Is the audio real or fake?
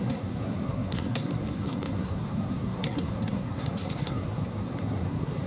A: fake